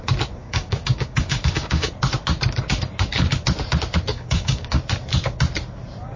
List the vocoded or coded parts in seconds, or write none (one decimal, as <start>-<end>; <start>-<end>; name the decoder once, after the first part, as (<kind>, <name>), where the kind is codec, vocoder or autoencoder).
0.4-1.9 (codec, DAC); 4.1-4.8